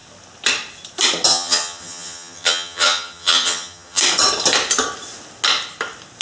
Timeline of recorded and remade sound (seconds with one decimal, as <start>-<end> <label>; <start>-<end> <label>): 0.0-1.3 recorded; 1.3-4.0 remade; 4.0-6.2 recorded